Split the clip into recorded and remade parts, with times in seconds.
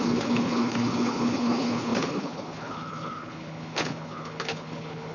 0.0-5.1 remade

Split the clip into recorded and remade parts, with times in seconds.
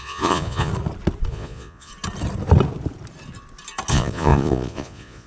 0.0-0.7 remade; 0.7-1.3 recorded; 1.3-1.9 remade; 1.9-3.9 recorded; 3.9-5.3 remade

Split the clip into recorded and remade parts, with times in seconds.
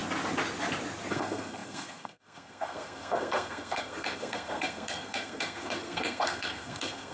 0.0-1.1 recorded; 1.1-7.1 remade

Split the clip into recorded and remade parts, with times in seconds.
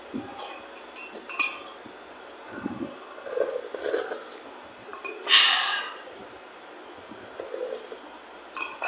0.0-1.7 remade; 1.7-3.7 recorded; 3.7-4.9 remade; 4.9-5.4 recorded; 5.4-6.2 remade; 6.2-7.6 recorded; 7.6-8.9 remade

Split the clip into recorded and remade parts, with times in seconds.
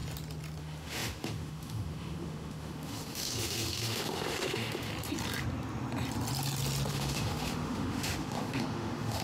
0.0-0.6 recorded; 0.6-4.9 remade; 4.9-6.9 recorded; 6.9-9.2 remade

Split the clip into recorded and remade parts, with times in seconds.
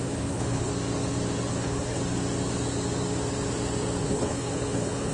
0.0-0.7 remade; 0.7-1.5 recorded; 1.5-2.0 remade; 2.0-4.0 recorded; 4.0-5.1 remade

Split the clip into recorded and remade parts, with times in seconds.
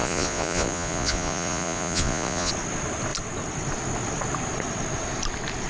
0.0-2.5 remade; 2.5-5.7 recorded